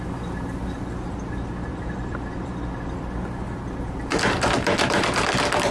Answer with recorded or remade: remade